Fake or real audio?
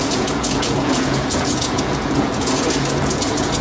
fake